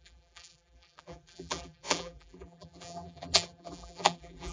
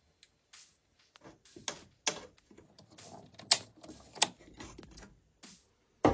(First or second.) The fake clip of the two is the first